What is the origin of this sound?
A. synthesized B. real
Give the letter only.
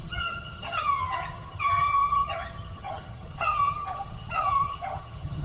A